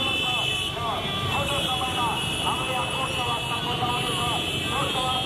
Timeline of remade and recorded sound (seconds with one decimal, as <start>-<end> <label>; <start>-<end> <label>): 0.0-1.3 recorded; 1.3-3.3 remade; 3.3-5.3 recorded

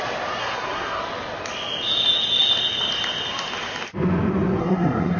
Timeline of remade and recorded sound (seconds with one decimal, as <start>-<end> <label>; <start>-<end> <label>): 0.0-0.4 recorded; 0.4-1.0 remade; 1.0-4.6 recorded; 4.6-5.2 remade

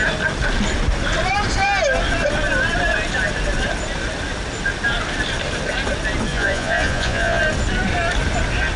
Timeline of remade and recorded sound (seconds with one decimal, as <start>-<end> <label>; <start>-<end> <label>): 0.0-6.3 recorded; 6.3-7.4 remade; 7.4-8.8 recorded